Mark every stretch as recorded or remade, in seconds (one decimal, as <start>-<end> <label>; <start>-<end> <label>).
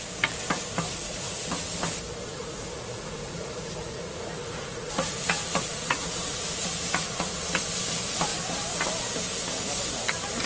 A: 0.0-1.0 recorded; 1.0-1.7 remade; 1.7-2.4 recorded; 2.4-7.6 remade; 7.6-10.5 recorded